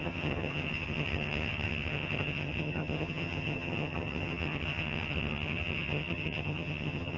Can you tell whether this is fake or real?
fake